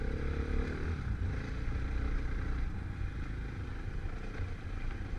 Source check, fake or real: real